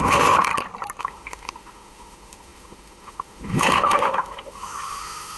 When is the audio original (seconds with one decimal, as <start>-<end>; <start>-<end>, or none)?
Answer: 0.5-1.0